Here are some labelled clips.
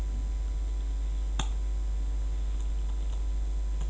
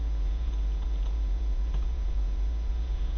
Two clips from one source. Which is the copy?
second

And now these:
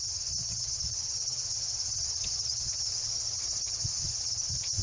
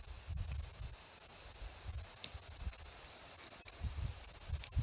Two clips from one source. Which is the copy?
first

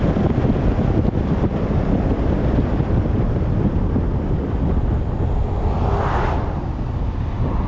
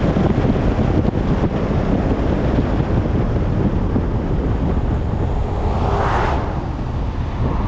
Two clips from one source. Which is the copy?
first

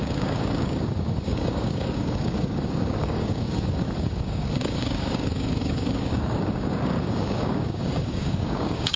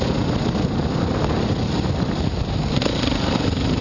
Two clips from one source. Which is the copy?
first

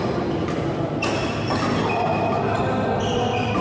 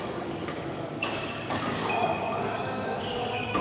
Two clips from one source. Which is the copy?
second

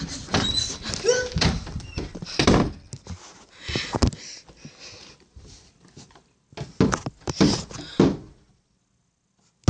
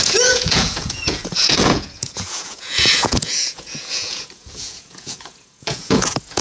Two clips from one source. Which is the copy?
second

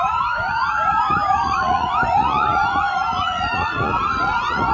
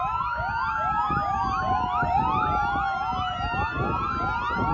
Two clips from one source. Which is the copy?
first